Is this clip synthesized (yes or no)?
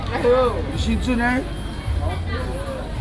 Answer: no